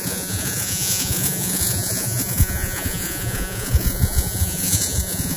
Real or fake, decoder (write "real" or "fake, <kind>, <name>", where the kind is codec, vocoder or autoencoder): fake, vocoder, Vocos